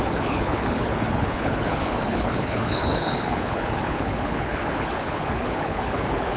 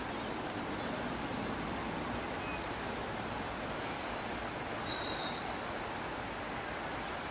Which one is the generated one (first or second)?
first